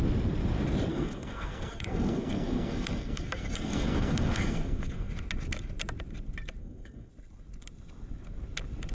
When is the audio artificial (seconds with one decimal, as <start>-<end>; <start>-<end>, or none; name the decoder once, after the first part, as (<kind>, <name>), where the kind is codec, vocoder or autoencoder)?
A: 0.9-5.1 (codec, SNAC); 6.6-7.1